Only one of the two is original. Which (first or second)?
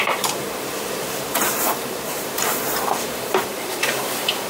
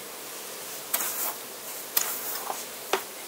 second